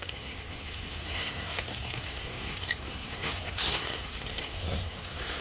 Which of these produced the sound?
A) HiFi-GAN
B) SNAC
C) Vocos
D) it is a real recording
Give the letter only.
B